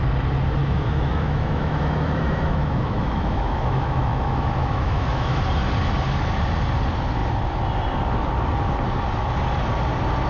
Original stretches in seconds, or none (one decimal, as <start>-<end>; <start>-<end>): 0.0-0.6; 5.4-10.3